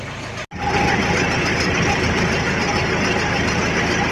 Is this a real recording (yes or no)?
yes